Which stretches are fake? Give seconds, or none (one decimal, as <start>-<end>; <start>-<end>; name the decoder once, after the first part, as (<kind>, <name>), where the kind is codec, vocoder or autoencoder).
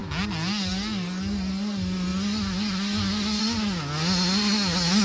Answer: none